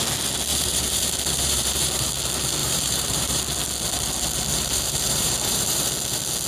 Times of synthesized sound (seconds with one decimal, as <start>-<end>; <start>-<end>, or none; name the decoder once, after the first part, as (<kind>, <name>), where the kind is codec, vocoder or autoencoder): 0.5-2.1 (vocoder, BigVGAN v2); 2.6-3.4; 4.5-5.9

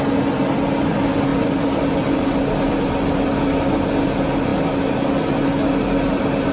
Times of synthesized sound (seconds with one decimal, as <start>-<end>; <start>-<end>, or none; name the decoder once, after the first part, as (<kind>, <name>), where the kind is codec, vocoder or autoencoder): 1.3-2.4 (vocoder, BigVGAN v2)